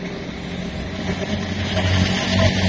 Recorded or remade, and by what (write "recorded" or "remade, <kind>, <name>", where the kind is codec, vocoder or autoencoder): recorded